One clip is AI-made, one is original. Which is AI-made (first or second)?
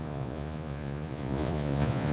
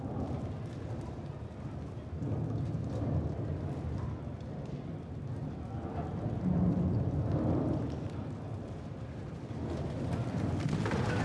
first